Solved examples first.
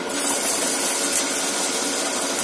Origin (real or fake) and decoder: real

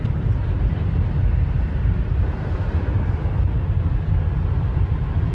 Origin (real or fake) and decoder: real